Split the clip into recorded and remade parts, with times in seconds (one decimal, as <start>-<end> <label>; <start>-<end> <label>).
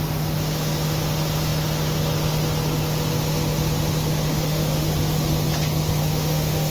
0.0-4.3 recorded; 4.3-4.9 remade; 4.9-6.0 recorded; 6.0-6.7 remade